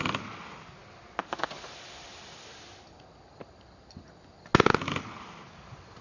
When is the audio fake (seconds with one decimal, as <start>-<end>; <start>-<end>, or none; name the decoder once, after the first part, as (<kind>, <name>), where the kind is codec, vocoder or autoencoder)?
none